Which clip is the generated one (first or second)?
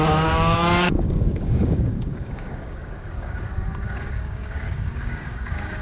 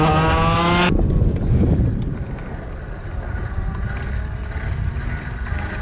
first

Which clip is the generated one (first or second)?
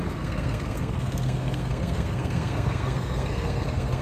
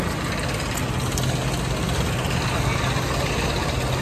first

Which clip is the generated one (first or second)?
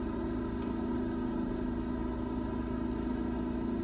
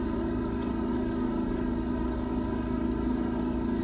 second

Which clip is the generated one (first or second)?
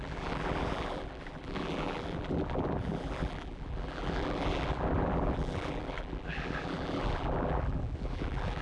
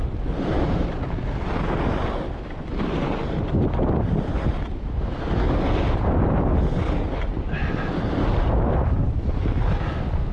first